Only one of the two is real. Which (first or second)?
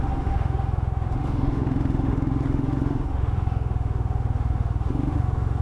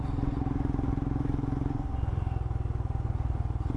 second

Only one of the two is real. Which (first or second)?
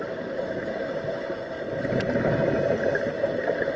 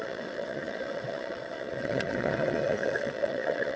first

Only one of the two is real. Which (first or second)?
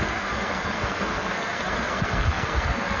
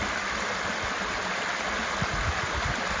second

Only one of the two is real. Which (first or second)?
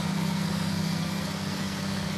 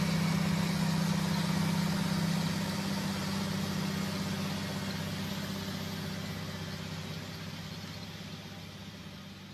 second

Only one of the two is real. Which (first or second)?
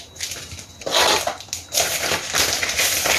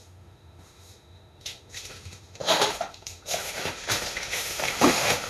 first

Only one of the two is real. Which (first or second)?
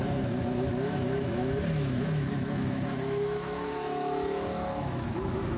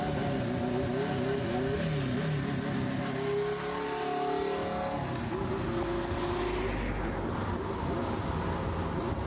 second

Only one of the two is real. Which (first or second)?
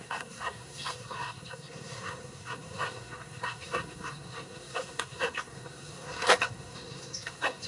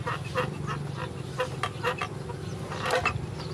second